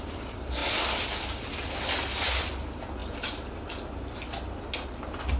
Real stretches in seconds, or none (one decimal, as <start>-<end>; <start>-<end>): 0.0-3.0; 3.6-5.4